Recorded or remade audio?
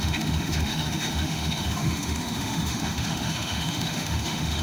remade